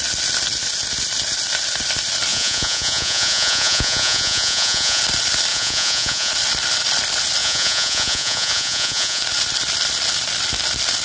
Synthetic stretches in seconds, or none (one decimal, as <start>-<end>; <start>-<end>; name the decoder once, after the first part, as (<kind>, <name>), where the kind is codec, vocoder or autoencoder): 2.3-5.0 (vocoder, Vocos); 5.5-6.3; 7.4-9.2